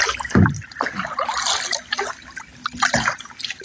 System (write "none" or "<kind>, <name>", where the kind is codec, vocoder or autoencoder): none